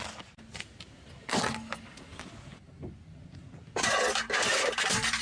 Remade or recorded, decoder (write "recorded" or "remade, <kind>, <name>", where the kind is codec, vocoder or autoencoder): recorded